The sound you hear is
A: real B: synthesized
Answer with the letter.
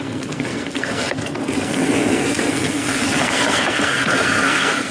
B